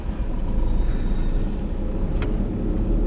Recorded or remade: recorded